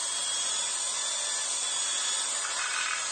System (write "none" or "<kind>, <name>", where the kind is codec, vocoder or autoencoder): none